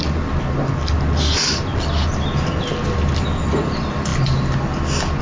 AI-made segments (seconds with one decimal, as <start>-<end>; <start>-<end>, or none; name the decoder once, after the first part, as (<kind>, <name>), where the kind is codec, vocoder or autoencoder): none